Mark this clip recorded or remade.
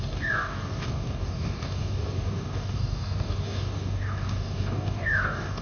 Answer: remade